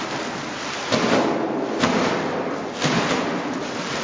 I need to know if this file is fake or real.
real